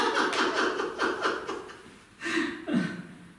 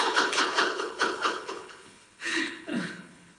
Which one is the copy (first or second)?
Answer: second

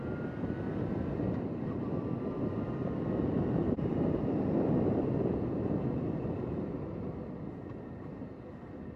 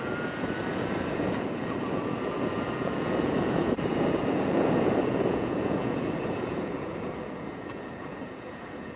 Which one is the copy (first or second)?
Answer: second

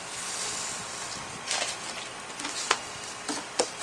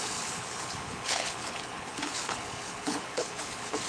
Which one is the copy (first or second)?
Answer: second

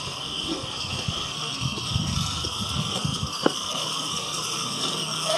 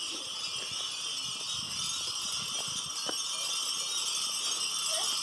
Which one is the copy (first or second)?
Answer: first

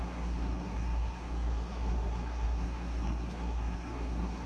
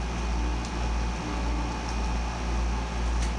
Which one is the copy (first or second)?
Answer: first